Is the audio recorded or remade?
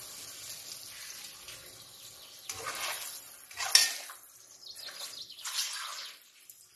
recorded